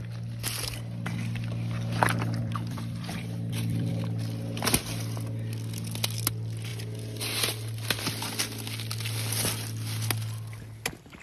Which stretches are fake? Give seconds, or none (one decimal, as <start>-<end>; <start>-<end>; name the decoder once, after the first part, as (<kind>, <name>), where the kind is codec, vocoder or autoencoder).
2.4-3.9 (vocoder, BigVGAN v2)